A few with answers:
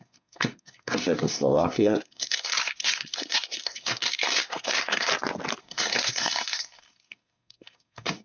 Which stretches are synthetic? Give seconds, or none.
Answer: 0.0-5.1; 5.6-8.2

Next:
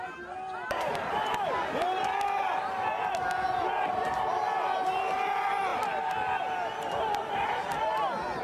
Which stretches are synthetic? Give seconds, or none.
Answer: none

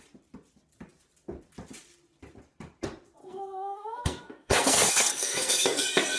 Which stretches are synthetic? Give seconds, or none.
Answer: 3.2-6.2

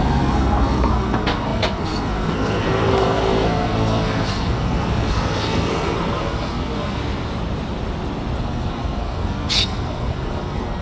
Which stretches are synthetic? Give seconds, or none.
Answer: 0.0-7.0; 8.4-10.8

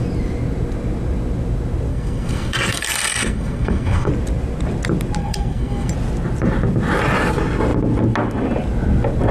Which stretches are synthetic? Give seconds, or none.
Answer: 1.9-4.1; 5.2-5.9

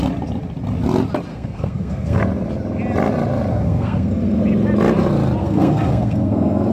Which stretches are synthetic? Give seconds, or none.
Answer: 1.3-2.2; 3.5-4.4; 5.4-6.7

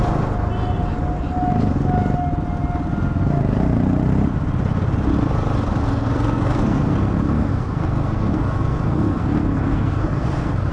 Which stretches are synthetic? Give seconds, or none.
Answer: 5.8-10.7